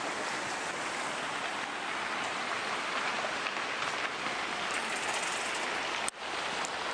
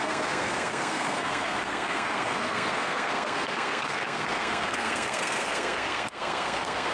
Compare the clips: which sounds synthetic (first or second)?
second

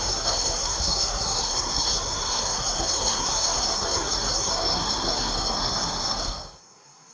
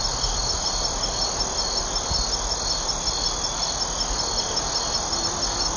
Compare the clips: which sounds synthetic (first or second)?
first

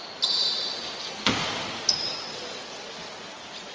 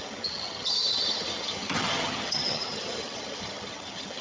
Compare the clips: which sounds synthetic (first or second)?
second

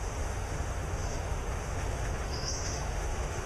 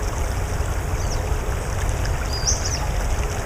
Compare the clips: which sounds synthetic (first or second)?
first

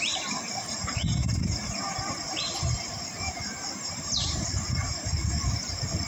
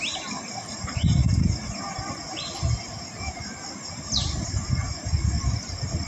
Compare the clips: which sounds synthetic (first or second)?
first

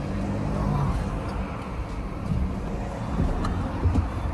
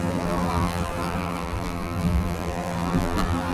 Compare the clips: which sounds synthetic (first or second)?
second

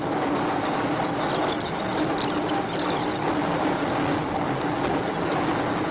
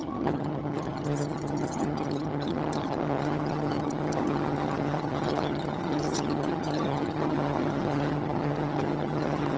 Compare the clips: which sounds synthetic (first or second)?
second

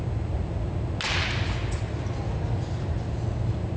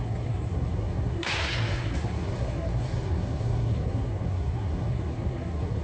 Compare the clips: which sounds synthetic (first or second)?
second